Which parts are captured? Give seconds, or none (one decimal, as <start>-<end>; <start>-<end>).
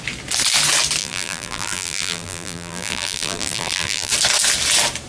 0.0-1.0; 4.1-5.1